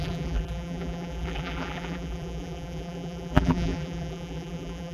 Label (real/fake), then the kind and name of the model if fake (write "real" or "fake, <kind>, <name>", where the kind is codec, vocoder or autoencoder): fake, vocoder, BigVGAN v2